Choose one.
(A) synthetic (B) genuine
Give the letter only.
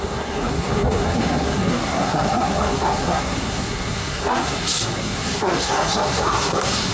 A